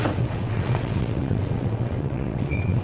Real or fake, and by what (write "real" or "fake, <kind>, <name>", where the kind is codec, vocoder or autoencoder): fake, vocoder, WaveNeXt